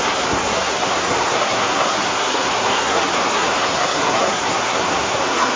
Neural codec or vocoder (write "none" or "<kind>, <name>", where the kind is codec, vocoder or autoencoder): codec, SNAC